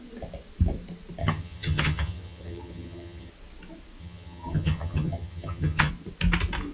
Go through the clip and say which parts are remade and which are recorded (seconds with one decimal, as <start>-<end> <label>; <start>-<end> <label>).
0.0-1.2 recorded; 1.2-3.3 remade; 3.3-4.0 recorded; 4.0-5.9 remade; 5.9-6.7 recorded